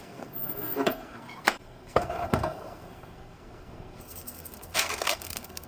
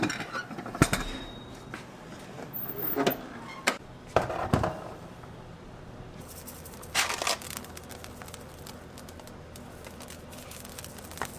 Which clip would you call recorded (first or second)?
second